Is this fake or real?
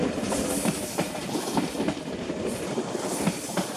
fake